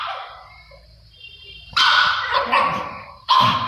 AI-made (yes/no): yes